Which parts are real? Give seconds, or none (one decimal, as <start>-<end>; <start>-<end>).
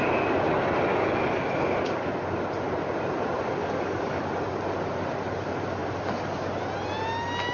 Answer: 0.0-0.9; 1.7-3.6; 4.3-7.5